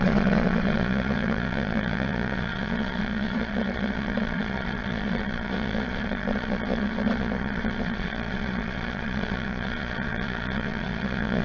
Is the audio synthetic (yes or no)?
yes